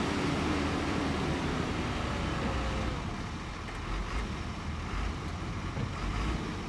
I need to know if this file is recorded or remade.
recorded